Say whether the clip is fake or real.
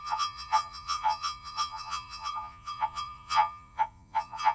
fake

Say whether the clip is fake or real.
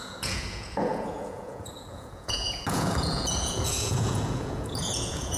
fake